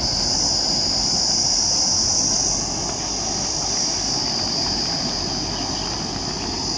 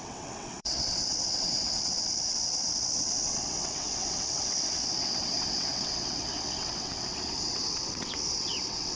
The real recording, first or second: first